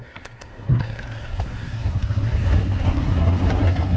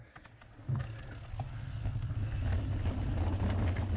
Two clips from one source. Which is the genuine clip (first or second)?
second